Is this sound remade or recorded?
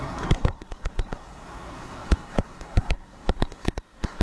remade